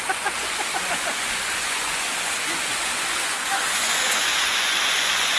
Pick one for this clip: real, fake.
fake